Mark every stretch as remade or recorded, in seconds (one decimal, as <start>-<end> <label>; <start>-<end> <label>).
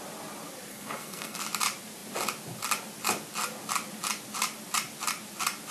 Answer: 0.0-0.7 recorded; 0.7-1.4 remade; 1.4-5.7 recorded